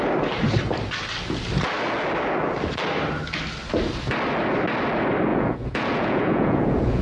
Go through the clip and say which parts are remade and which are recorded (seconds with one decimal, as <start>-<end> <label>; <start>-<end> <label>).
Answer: 0.0-5.3 recorded; 5.3-7.0 remade